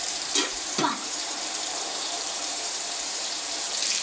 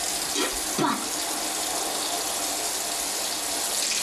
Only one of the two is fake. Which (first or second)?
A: first